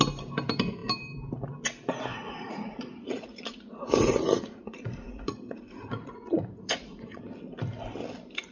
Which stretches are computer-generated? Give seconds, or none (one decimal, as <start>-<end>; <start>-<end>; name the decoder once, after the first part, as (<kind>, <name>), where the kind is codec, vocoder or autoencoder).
2.1-7.2 (vocoder, Vocos)